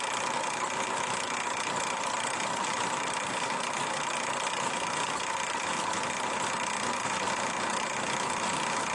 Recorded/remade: recorded